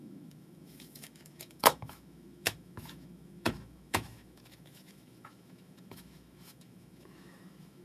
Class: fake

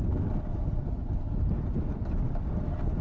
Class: real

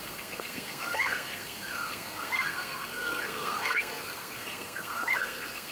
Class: fake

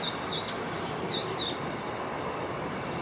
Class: real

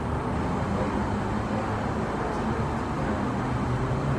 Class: real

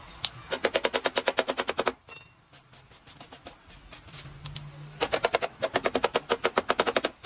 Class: real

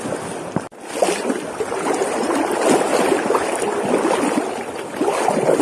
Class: real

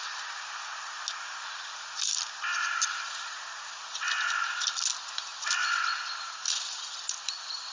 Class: real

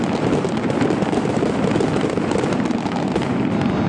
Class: real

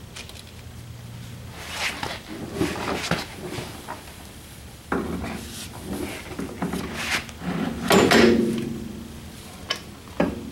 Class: real